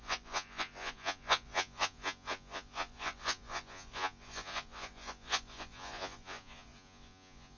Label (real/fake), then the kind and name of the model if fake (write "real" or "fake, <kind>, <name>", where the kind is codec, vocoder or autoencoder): fake, vocoder, Vocos